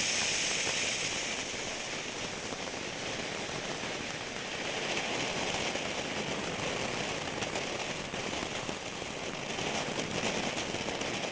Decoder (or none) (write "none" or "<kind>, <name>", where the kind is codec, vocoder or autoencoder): none